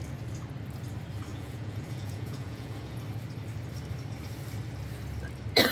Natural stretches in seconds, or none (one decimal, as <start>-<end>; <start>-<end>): 0.0-1.3; 3.0-5.7